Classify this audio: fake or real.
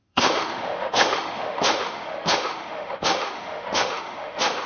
fake